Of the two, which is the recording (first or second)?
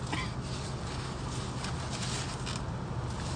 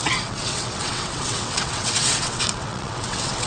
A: first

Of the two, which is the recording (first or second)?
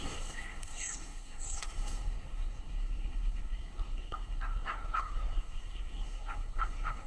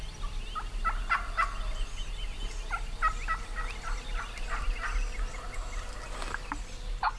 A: second